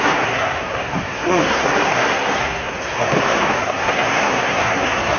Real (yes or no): no